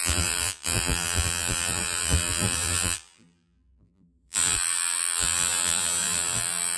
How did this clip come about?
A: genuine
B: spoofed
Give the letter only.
B